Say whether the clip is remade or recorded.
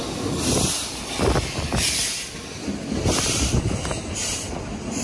recorded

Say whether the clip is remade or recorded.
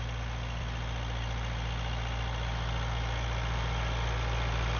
recorded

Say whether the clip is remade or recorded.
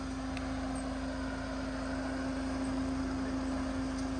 recorded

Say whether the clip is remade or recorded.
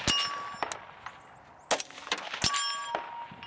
recorded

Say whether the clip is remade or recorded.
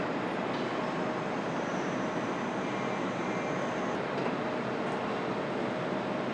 recorded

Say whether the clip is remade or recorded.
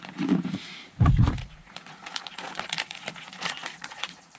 remade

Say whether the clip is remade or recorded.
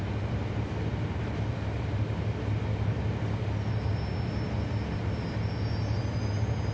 recorded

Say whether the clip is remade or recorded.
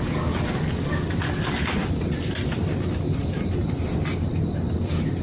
recorded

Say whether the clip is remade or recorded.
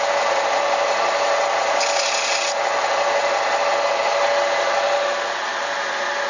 recorded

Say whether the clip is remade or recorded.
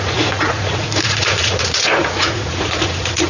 remade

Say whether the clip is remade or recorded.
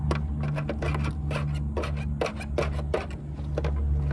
recorded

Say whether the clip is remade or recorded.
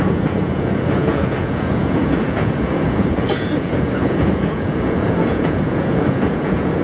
remade